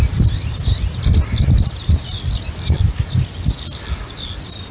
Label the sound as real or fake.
real